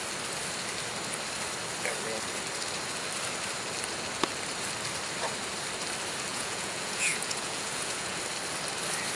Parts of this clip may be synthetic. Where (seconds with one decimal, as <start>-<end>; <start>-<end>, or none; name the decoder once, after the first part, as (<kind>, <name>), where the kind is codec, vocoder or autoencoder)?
6.3-8.2 (vocoder, Vocos)